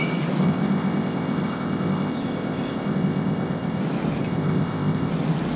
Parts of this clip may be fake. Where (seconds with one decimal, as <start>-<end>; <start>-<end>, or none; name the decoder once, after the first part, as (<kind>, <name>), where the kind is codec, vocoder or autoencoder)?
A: 0.4-3.8 (codec, ZipCodec); 4.2-5.1